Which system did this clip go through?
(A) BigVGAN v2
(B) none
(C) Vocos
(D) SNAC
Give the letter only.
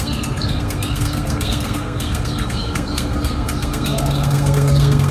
D